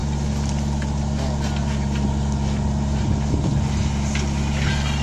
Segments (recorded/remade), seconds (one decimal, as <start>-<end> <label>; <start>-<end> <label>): 0.0-5.0 recorded